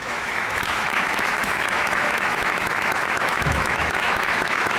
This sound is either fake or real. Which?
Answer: fake